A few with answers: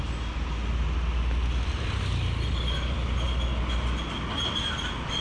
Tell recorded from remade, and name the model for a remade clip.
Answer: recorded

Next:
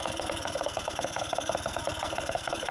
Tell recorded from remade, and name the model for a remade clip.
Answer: remade, codec, SNAC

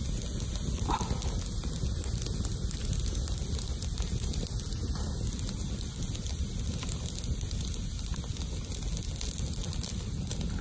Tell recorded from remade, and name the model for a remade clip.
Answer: recorded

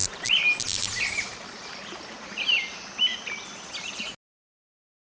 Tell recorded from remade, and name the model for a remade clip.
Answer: recorded